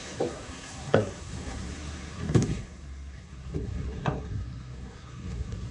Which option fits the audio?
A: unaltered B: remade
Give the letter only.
B